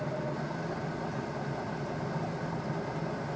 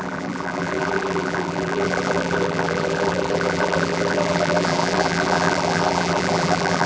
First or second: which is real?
first